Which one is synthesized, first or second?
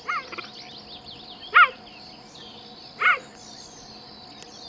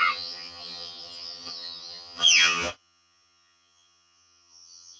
second